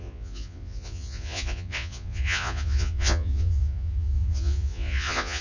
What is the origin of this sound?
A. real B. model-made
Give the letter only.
B